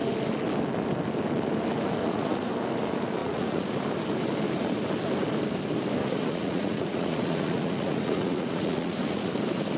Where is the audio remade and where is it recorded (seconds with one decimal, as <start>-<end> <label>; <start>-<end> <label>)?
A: 0.0-2.0 recorded; 2.0-2.5 remade; 2.5-3.2 recorded; 3.2-3.7 remade; 3.7-6.0 recorded; 6.0-9.3 remade; 9.3-9.8 recorded